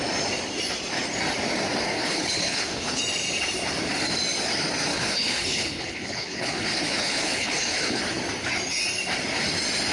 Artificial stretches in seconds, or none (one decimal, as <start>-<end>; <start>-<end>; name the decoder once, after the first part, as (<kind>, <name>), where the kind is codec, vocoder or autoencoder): 1.9-3.0 (codec, HILCodec); 4.9-8.0

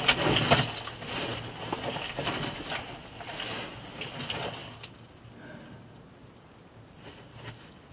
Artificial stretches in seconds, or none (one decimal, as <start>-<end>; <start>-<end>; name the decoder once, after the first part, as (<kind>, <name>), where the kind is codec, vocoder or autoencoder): none

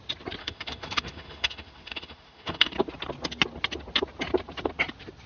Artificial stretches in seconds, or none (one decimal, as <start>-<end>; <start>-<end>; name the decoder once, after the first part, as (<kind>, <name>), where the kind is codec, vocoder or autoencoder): 0.4-2.7 (autoencoder, DAC-VAE)